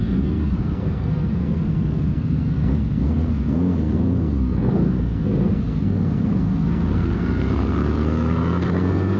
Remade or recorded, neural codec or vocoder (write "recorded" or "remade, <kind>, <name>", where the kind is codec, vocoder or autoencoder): remade, codec, SNAC